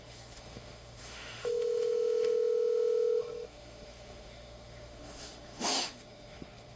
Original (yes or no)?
no